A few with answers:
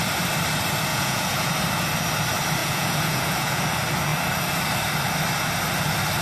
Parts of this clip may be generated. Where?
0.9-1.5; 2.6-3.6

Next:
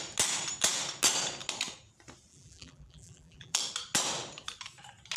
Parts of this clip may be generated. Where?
2.3-3.6

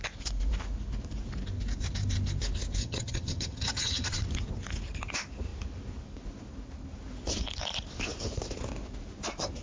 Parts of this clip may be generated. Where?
2.8-4.2

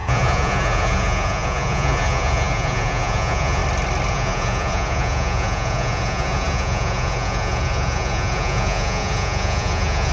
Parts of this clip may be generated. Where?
0.0-3.6; 4.1-10.1

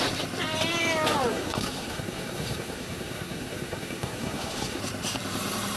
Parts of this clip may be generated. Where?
1.3-4.8

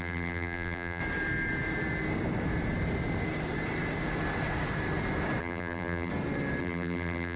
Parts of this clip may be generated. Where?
0.0-1.0; 5.4-6.1; 6.6-7.4